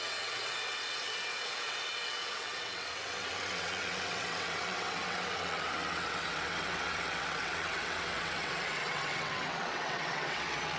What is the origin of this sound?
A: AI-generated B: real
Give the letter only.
A